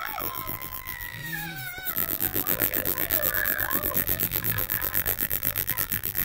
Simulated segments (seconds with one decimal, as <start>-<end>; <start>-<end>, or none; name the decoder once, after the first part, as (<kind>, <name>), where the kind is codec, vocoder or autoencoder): 0.0-1.2 (vocoder, BigVGAN v2); 1.9-6.2